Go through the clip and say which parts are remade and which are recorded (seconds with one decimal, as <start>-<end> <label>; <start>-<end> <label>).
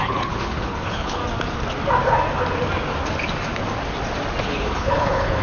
0.0-1.2 remade; 1.2-4.4 recorded; 4.4-5.4 remade